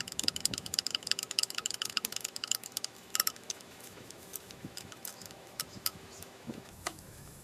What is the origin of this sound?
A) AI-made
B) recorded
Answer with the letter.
A